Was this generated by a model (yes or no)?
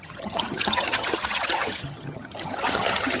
yes